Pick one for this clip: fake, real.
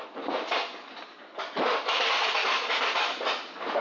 real